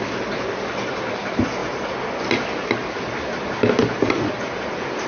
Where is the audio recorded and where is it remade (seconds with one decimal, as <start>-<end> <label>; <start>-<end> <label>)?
0.0-5.1 recorded